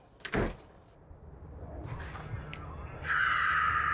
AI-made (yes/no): no